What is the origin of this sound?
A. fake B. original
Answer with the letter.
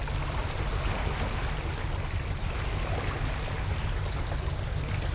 B